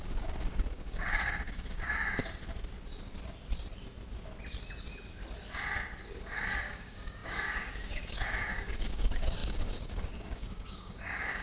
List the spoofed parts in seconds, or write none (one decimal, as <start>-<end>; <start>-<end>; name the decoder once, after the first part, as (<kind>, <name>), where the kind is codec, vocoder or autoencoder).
0.0-2.2 (codec, DAC); 6.2-11.4